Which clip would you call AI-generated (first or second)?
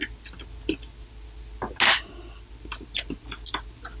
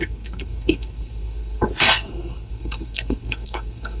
second